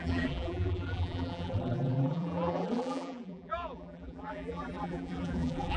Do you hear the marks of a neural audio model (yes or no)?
yes